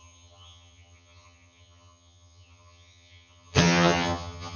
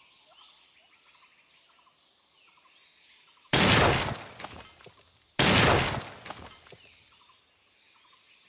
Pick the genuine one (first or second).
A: second